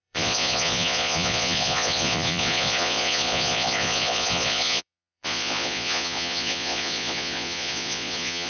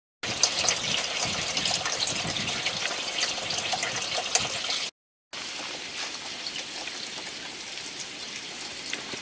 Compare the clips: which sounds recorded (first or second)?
second